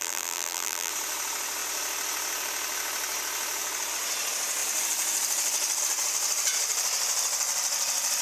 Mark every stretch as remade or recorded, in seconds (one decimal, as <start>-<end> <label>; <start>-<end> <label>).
0.0-0.9 remade; 0.9-8.2 recorded